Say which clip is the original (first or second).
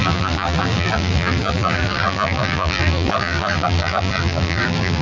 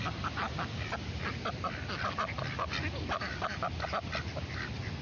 second